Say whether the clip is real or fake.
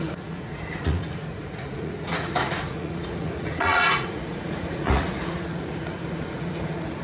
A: fake